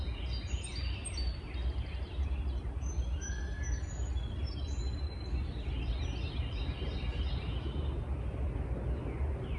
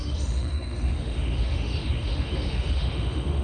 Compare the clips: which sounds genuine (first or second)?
first